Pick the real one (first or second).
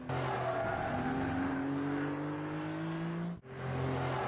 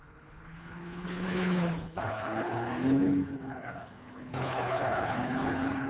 first